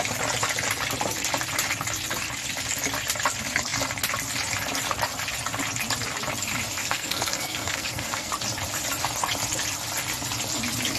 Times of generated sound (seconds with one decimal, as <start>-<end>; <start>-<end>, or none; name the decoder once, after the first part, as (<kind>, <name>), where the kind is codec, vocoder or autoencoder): 6.8-8.3 (codec, SNAC)